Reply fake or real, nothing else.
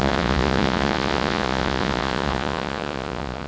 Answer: fake